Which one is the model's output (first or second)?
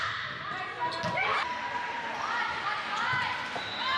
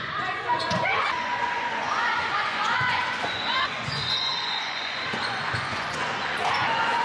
second